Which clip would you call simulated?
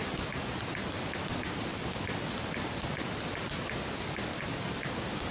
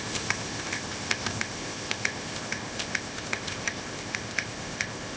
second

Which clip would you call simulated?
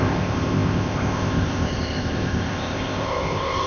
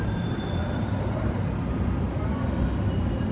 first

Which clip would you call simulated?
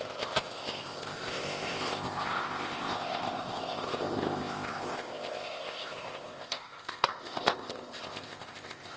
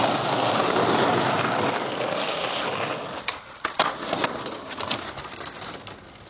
first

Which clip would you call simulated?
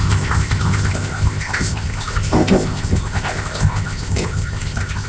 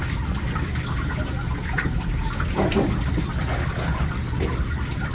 first